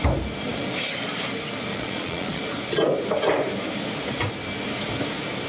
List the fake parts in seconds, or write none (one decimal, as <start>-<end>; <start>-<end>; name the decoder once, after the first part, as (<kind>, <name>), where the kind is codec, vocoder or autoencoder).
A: 1.7-2.4 (vocoder, Vocos)